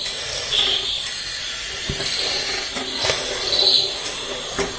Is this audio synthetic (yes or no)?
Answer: no